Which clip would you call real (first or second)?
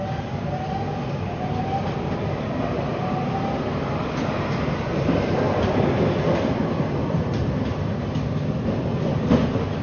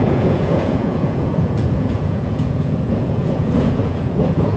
first